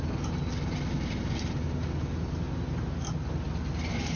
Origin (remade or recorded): recorded